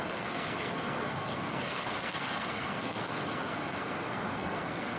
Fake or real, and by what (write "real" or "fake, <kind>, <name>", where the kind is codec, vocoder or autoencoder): fake, codec, SNAC